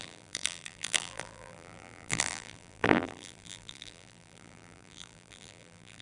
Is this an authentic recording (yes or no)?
no